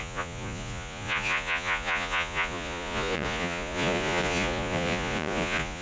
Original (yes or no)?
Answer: no